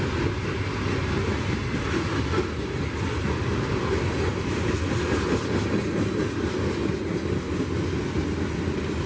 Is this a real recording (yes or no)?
yes